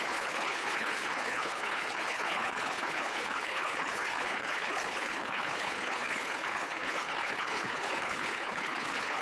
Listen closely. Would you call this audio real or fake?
fake